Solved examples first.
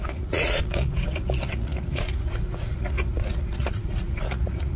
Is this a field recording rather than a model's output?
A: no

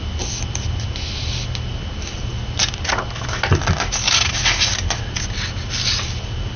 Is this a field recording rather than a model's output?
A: yes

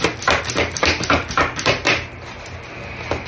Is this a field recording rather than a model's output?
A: yes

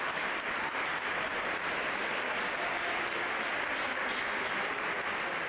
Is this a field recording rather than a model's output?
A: yes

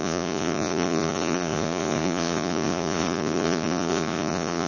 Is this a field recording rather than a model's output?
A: no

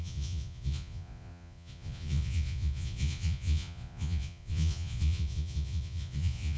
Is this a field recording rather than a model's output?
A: no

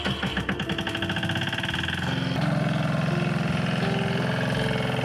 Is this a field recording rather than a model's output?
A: yes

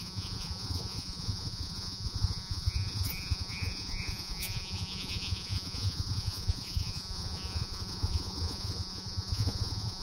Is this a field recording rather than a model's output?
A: no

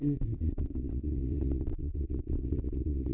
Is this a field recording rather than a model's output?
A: no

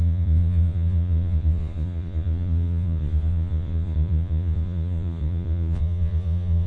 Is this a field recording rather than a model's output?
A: no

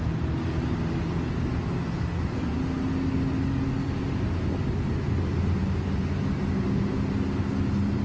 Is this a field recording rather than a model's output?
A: yes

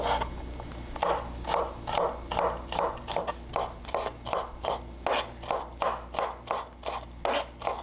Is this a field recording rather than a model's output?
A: yes